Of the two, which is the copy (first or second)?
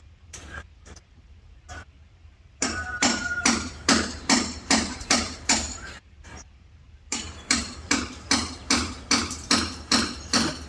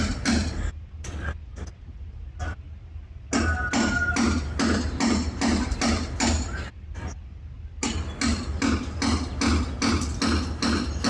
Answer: first